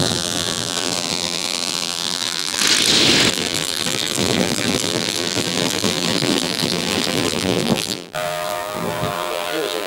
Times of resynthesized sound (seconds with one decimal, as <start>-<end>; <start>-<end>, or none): 0.0-2.6; 3.3-9.9